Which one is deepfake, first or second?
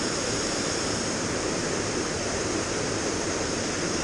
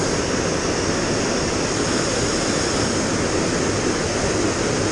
first